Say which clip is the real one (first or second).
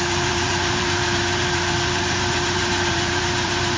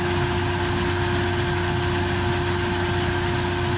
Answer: second